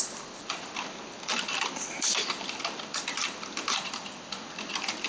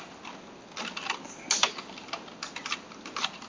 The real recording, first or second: second